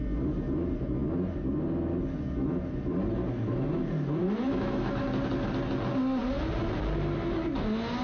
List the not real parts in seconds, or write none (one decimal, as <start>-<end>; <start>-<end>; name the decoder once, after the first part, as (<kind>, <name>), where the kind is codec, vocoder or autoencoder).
4.2-4.9 (autoencoder, DAC-VAE)